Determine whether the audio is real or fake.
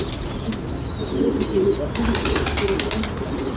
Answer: real